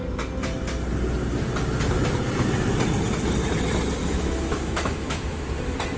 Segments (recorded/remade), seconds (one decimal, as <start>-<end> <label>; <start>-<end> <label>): 0.0-4.0 recorded; 4.0-5.5 remade; 5.5-6.0 recorded